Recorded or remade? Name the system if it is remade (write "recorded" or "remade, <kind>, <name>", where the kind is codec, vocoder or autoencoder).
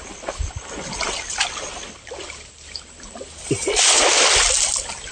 recorded